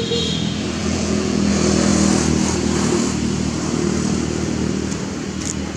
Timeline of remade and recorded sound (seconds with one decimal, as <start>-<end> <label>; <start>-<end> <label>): 0.0-0.8 recorded; 0.8-1.5 remade; 1.5-5.8 recorded